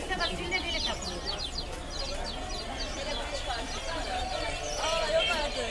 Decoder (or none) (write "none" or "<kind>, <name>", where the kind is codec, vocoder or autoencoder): none